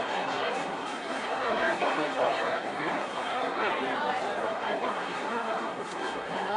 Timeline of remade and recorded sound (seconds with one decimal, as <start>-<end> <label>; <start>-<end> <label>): 0.0-3.7 remade; 3.7-4.4 recorded; 4.4-6.6 remade